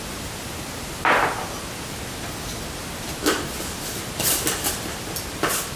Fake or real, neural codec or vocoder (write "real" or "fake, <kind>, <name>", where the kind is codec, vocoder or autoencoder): real